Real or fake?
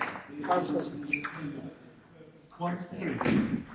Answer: real